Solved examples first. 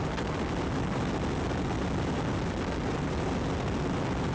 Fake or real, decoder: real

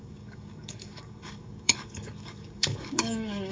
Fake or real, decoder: fake, codec, DAC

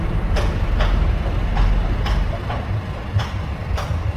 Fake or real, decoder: real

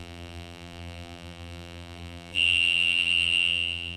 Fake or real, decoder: fake, vocoder, BigVGAN v2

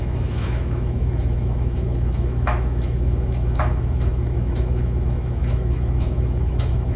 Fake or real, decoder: fake, autoencoder, DAC-VAE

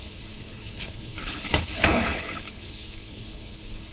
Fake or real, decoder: fake, codec, HILCodec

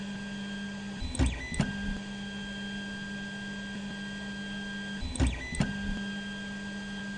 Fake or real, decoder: real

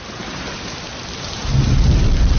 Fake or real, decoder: real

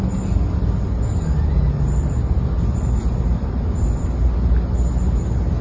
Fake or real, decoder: real